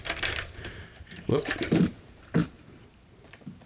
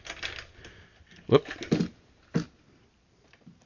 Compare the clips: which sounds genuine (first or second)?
second